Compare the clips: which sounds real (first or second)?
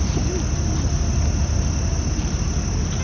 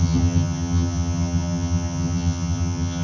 first